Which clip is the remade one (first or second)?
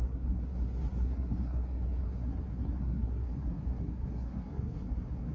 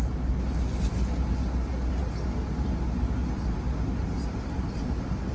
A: first